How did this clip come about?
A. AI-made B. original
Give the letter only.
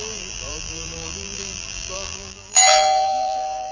A